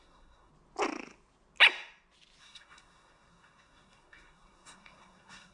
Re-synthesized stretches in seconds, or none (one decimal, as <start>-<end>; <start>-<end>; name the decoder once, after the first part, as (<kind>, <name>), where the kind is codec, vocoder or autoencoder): 0.0-0.5 (codec, SNAC); 2.4-5.5